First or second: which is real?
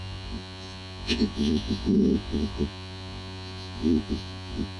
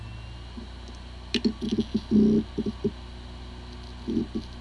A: second